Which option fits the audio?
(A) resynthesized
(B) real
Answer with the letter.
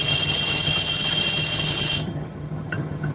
A